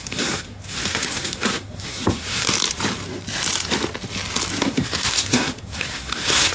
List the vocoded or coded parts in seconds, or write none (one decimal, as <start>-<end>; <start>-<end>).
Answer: 0.0-2.5; 4.6-6.5